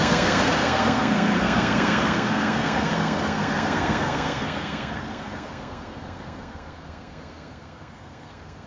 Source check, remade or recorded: remade